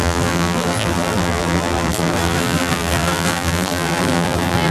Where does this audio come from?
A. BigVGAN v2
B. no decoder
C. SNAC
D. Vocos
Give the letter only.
A